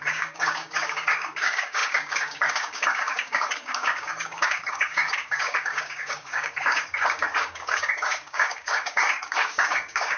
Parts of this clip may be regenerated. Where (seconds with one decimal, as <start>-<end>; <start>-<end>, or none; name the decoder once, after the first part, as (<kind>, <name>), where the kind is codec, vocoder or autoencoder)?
0.0-10.2 (codec, DAC)